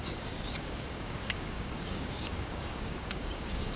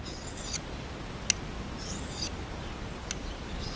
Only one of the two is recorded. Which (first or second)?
second